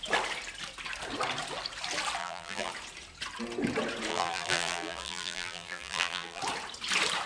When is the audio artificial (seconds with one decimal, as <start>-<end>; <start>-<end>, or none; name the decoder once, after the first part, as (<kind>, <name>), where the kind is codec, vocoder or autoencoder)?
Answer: 2.2-2.7 (vocoder, BigVGAN v2); 4.1-6.4

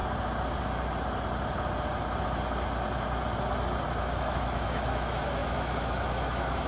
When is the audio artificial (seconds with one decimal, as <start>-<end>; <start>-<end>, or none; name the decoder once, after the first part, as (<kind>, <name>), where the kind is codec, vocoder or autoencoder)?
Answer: 4.0-6.7 (autoencoder, DAC-VAE)

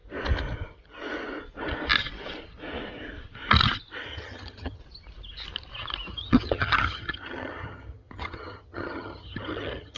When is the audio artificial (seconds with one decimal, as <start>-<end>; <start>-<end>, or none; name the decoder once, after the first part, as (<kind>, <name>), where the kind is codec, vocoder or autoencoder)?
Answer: 4.1-4.8 (vocoder, HiFi-GAN); 6.1-10.0

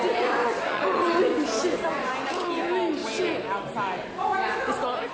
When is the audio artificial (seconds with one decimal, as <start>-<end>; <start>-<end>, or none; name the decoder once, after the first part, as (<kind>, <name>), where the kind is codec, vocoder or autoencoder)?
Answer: 0.4-1.2 (vocoder, WaveNeXt)

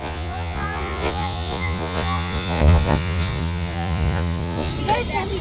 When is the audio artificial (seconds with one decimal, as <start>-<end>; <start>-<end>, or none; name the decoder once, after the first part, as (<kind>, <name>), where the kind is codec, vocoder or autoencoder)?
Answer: 0.0-4.7 (vocoder, Vocos)

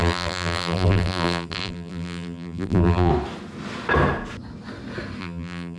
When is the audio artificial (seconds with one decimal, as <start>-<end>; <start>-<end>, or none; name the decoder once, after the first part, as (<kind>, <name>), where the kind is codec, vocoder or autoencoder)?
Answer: 0.0-3.1 (vocoder, BigVGAN v2); 5.2-5.8

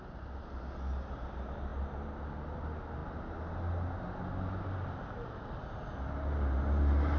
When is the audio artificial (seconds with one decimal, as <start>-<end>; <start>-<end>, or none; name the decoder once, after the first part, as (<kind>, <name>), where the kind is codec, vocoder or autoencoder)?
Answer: none